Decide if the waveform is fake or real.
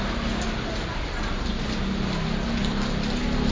real